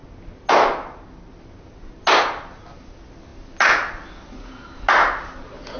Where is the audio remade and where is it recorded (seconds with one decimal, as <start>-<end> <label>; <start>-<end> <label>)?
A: 0.0-5.8 recorded